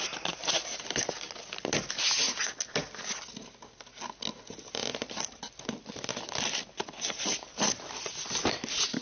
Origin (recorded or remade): recorded